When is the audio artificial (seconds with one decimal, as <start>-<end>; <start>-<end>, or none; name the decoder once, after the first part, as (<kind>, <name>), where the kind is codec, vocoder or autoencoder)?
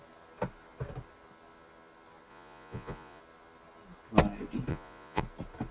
2.3-3.2 (vocoder, Vocos); 4.7-5.2